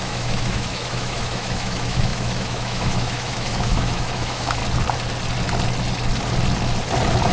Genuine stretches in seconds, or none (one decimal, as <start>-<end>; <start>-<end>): 4.6-7.3